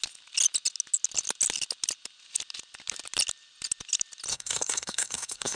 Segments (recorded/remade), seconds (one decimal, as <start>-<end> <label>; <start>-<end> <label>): 0.0-4.3 recorded; 4.3-5.6 remade